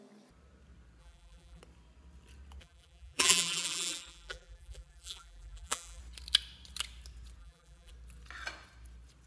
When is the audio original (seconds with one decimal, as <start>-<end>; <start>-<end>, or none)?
0.0-1.0; 1.6-2.6; 6.0-7.4; 7.9-9.3